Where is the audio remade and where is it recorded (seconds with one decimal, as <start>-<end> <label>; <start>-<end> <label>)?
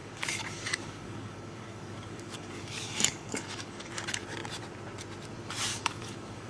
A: 0.0-3.9 remade; 3.9-5.7 recorded; 5.7-6.5 remade